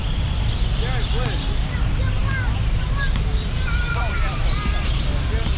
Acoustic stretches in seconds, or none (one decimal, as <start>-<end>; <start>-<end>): 0.0-5.6